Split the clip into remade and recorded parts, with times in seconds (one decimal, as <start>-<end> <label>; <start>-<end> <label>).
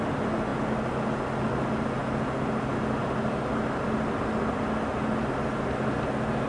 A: 0.0-6.5 recorded